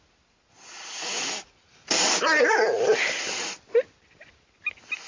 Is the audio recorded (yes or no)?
yes